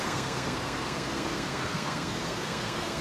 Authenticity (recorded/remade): remade